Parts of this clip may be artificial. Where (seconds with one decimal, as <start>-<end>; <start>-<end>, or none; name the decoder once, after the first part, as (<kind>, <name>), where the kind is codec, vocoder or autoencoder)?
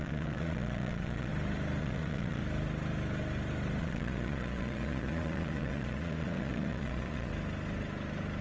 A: 0.0-1.3 (vocoder, Vocos); 1.8-2.4; 3.8-7.3